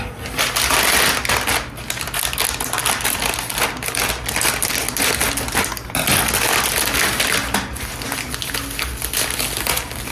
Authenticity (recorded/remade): recorded